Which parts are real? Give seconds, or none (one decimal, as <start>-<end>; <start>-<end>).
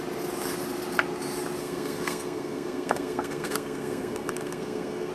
0.0-1.6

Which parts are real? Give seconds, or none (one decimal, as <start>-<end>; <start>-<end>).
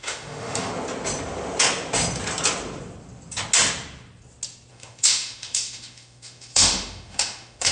0.7-4.7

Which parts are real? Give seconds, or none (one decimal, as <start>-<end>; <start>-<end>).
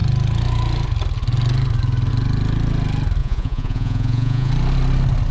0.0-3.2; 4.5-5.3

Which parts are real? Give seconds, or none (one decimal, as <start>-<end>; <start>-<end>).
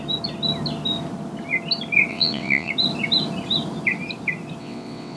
0.0-2.1; 2.7-4.6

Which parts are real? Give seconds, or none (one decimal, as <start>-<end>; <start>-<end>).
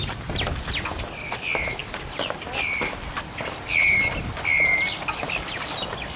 0.0-6.2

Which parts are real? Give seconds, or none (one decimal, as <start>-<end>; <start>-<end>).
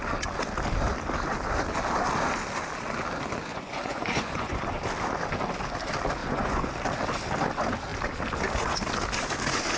0.0-3.5; 4.7-6.2; 6.7-9.8